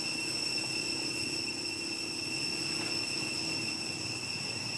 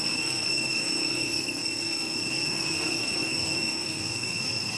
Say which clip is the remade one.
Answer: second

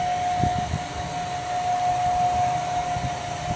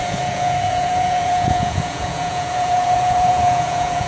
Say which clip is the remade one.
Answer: second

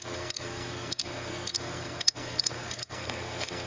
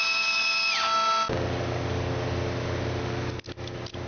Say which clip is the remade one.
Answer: first